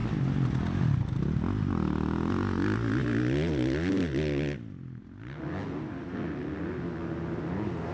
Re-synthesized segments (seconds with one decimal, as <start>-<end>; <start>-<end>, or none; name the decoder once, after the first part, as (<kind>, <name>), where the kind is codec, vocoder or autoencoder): none